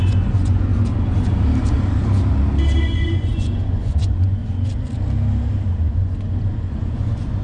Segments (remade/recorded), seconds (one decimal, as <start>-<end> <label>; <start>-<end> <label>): 0.0-0.7 remade; 0.7-2.8 recorded; 2.8-4.4 remade; 4.4-5.9 recorded; 5.9-7.4 remade